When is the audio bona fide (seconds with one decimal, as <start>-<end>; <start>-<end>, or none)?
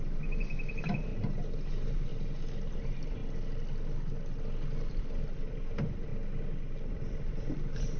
1.1-1.7; 2.1-2.7; 3.2-4.9; 6.1-6.9